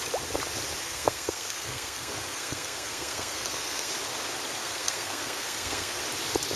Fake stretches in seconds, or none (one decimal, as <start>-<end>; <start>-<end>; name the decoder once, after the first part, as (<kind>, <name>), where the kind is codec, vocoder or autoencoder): 0.8-3.9 (codec, SNAC); 4.6-6.0